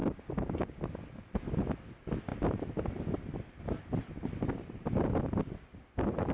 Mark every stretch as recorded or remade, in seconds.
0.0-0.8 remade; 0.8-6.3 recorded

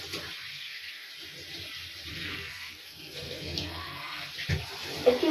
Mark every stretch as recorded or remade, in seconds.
0.0-0.5 recorded; 0.5-1.1 remade; 1.1-2.1 recorded; 2.1-4.3 remade; 4.3-5.3 recorded

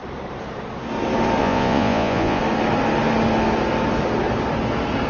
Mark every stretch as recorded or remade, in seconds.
0.0-1.4 recorded; 1.4-2.4 remade; 2.4-5.1 recorded

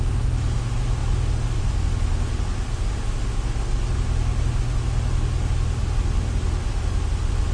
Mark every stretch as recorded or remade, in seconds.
0.0-7.5 recorded

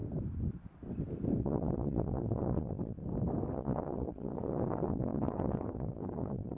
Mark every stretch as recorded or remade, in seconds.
0.0-1.4 recorded; 1.4-3.0 remade; 3.0-3.5 recorded; 3.5-6.6 remade

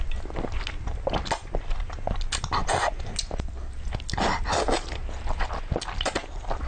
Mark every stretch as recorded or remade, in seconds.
0.0-6.7 recorded

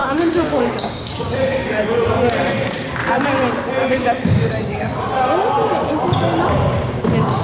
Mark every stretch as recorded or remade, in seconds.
0.0-1.7 remade; 1.7-3.8 recorded; 3.8-5.0 remade; 5.0-7.4 recorded